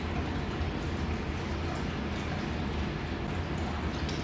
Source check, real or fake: real